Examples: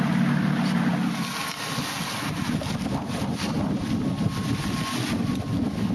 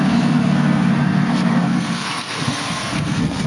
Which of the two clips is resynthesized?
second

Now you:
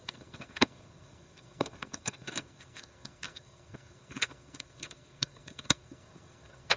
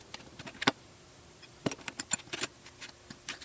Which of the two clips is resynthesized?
first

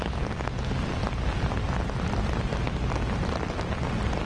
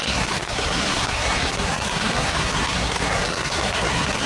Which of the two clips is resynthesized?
second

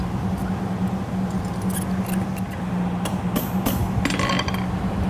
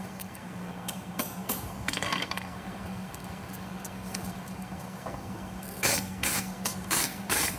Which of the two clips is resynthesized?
second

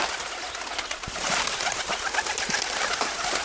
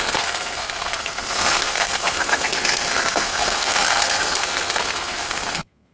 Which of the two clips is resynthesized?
second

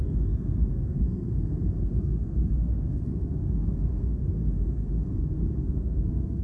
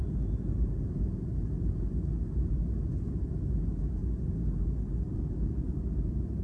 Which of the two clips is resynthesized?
first